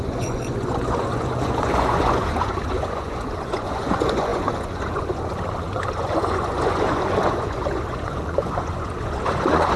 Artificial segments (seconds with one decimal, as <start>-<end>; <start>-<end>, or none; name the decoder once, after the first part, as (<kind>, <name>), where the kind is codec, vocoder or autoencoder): 0.0-9.8 (vocoder, Vocos)